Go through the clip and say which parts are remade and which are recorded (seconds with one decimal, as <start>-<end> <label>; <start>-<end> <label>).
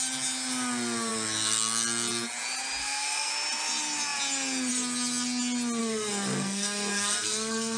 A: 0.0-2.8 recorded; 2.8-3.3 remade; 3.3-5.8 recorded; 5.8-7.8 remade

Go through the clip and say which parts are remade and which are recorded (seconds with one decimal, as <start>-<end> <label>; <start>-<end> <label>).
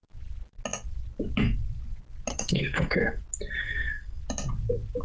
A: 0.0-2.3 recorded; 2.3-3.2 remade; 3.2-3.6 recorded; 3.6-4.2 remade; 4.2-5.0 recorded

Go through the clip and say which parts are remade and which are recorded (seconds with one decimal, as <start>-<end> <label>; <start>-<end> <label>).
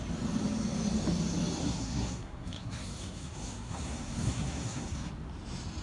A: 0.0-1.6 recorded; 1.6-5.1 remade; 5.1-5.8 recorded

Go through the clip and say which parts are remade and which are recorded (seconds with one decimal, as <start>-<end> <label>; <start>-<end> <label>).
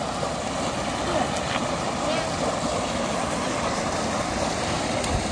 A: 0.0-5.3 recorded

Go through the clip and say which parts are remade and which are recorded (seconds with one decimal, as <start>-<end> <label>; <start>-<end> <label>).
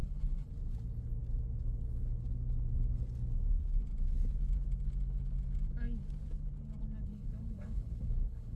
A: 0.0-0.5 remade; 0.5-7.1 recorded; 7.1-8.6 remade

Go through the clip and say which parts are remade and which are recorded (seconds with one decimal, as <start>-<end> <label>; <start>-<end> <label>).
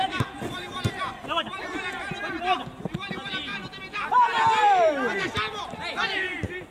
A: 0.0-6.7 recorded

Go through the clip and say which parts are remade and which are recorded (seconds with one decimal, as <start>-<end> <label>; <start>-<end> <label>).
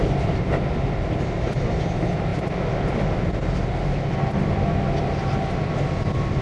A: 0.0-6.4 recorded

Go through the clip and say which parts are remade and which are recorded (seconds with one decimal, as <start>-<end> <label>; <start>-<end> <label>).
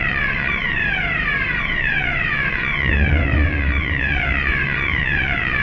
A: 0.0-0.8 remade; 0.8-1.6 recorded; 1.6-5.6 remade